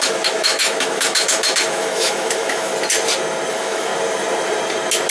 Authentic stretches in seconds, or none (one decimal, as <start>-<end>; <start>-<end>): 2.7-3.5; 3.9-5.1